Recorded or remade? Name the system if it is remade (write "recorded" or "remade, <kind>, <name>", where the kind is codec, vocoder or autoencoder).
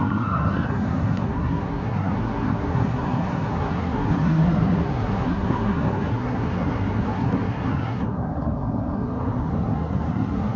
remade, codec, SNAC